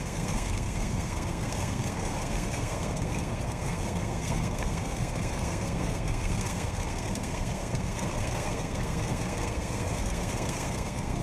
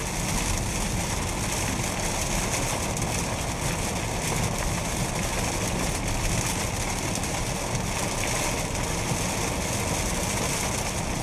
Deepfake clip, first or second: first